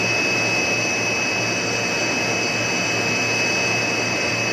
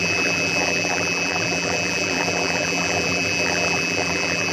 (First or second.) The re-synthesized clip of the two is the second